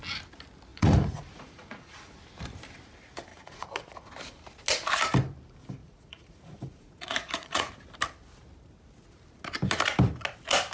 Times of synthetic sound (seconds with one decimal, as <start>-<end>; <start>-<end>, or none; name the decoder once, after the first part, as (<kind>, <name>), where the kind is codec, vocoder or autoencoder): 0.7-2.2 (vocoder, Vocos); 3.3-4.1; 5.8-7.7